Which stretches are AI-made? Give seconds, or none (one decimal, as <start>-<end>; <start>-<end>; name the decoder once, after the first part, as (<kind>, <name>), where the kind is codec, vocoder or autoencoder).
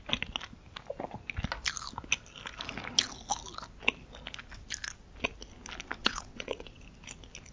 6.0-6.8 (vocoder, WaveNeXt)